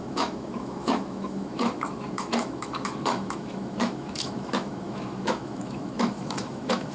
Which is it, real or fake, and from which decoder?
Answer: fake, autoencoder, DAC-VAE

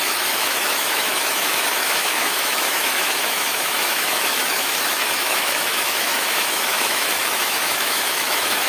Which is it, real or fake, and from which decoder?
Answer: fake, autoencoder, DAC-VAE